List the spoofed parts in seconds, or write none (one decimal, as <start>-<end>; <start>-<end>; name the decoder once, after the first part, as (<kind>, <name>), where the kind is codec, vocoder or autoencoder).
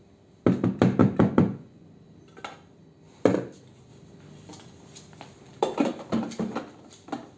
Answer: 1.0-1.9 (vocoder, Vocos)